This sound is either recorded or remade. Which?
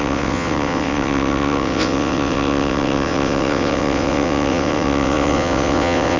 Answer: remade